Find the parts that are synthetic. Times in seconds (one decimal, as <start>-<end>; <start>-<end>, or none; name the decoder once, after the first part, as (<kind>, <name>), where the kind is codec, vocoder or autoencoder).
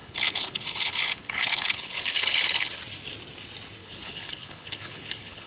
0.0-2.8 (codec, HILCodec); 3.8-5.5